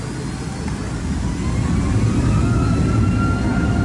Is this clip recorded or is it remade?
recorded